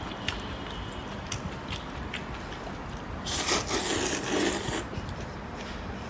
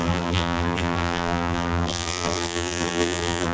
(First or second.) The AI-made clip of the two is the second